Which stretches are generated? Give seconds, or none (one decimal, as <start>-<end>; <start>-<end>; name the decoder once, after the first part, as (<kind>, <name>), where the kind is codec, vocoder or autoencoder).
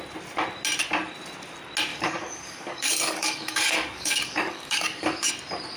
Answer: 1.9-5.3 (codec, DAC)